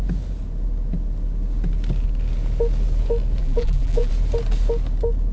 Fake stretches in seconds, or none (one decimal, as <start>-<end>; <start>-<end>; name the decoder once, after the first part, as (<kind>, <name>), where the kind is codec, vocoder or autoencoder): 3.4-4.1 (vocoder, BigVGAN v2)